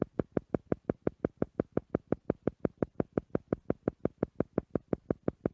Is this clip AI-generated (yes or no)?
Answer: no